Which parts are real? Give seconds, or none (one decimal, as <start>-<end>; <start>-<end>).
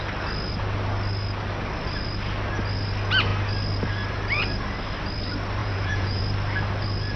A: 0.0-5.6; 6.2-7.2